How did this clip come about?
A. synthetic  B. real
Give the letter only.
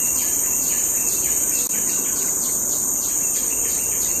B